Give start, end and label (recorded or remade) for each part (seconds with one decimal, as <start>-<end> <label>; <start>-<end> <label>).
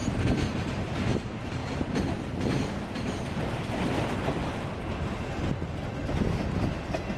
0.0-0.9 remade; 0.9-1.6 recorded; 1.6-4.5 remade; 4.5-7.2 recorded